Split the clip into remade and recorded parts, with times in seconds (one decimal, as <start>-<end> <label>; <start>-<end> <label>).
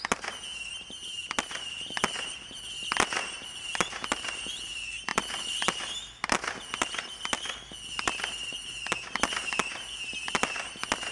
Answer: 0.0-11.1 recorded